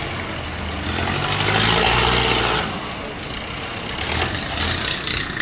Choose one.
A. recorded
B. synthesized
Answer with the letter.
A